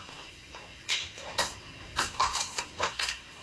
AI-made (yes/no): yes